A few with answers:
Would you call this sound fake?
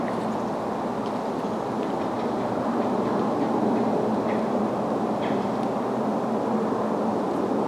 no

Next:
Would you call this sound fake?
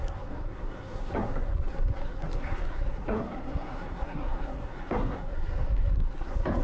yes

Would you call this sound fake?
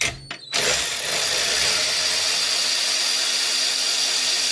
no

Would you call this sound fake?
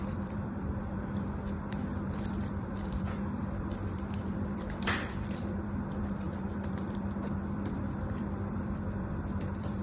yes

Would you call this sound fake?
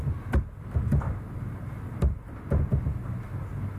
no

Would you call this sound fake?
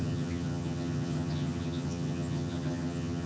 yes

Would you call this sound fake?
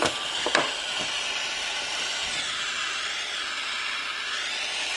no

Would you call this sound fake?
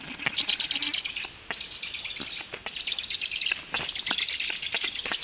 no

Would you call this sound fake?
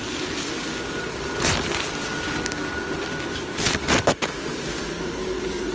no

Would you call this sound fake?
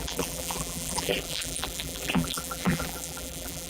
yes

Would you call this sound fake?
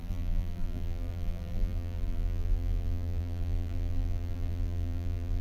yes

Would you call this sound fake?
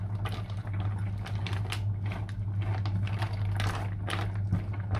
no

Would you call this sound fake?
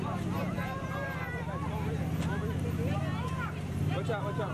no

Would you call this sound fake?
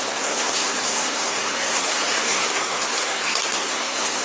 yes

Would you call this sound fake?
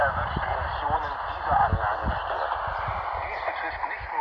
no